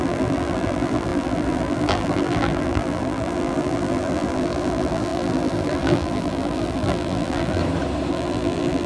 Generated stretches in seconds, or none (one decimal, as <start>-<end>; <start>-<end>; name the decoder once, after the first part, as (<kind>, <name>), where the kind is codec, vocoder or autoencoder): 0.0-7.6 (vocoder, BigVGAN v2); 8.1-8.9